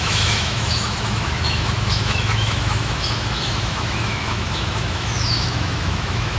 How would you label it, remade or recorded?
remade